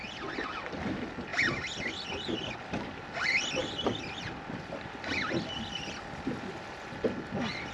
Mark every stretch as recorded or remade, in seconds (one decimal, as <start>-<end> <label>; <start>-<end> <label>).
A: 0.0-7.7 recorded